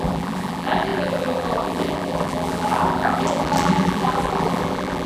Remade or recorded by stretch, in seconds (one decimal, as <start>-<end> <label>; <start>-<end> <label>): 0.0-5.1 remade